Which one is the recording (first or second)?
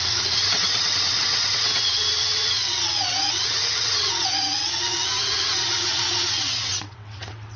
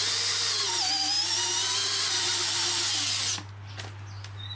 second